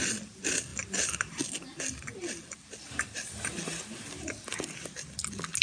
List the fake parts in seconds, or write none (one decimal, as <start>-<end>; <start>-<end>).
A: none